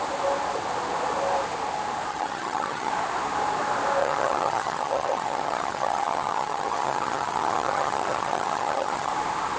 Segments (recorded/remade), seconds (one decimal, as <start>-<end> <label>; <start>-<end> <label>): 0.0-2.1 recorded; 2.1-2.9 remade; 2.9-4.0 recorded; 4.0-9.1 remade; 9.1-9.6 recorded